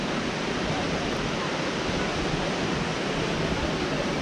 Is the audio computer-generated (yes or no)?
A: no